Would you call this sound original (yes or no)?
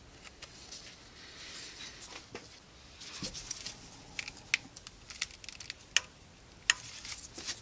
yes